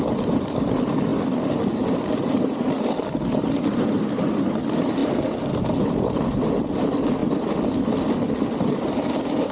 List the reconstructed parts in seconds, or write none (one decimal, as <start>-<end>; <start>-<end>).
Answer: none